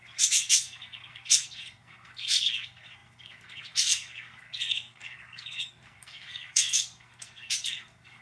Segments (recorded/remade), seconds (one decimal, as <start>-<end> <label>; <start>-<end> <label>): 0.0-8.2 remade